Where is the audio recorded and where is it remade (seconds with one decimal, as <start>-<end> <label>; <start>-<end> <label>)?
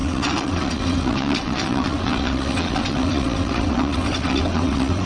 0.0-5.1 remade